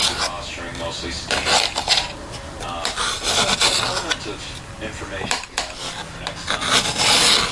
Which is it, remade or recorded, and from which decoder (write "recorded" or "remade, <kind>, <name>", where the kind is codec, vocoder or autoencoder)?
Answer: recorded